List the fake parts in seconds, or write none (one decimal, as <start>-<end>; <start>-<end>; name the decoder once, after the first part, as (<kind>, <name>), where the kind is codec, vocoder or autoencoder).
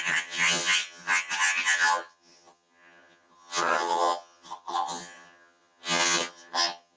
0.0-7.0 (vocoder, HiFi-GAN)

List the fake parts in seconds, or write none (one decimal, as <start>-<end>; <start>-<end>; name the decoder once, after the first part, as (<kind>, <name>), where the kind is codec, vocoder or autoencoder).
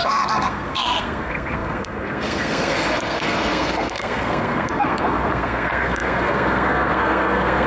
0.0-7.7 (codec, SNAC)